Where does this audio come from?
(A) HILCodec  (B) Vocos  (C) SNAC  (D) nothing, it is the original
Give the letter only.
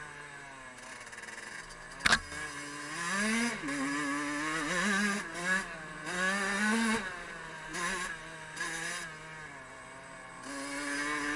D